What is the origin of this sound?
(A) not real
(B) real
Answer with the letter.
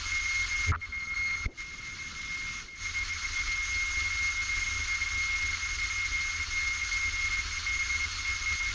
B